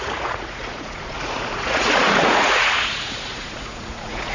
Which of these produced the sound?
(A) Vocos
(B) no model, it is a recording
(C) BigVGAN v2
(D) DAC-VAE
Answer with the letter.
A